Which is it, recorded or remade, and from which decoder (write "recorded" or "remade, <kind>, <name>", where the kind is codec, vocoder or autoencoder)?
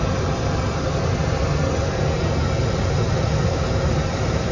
recorded